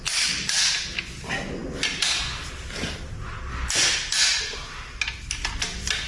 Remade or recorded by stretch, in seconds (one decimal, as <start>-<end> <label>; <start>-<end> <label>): 0.0-6.1 recorded